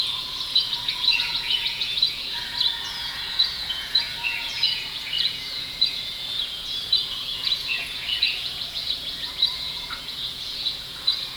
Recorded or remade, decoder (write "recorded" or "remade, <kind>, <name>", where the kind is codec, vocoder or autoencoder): remade, vocoder, Vocos